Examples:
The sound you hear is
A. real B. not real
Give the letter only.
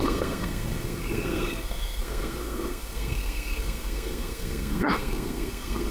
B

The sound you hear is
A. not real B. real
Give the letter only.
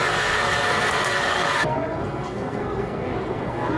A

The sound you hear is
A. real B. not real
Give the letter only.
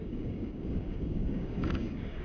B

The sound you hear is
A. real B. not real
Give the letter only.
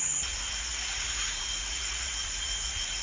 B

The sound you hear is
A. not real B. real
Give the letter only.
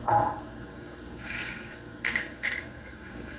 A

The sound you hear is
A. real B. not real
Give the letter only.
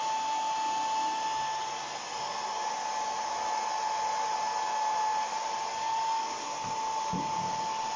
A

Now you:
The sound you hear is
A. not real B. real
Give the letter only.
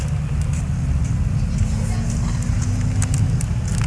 B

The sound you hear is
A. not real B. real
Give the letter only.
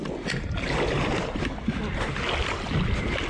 B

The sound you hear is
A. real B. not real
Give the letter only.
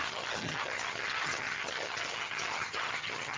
B